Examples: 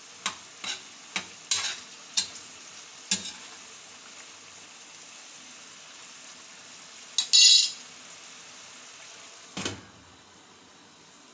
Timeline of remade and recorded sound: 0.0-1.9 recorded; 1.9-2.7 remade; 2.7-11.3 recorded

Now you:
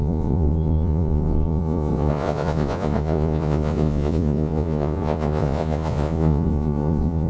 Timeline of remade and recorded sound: 0.0-7.3 remade

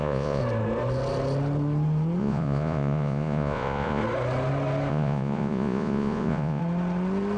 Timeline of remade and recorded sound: 0.0-0.4 remade; 0.4-2.2 recorded; 2.2-4.0 remade; 4.0-4.9 recorded; 4.9-6.6 remade; 6.6-7.4 recorded